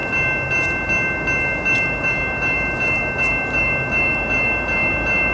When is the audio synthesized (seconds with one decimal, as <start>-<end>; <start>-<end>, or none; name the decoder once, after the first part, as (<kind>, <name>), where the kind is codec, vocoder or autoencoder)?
none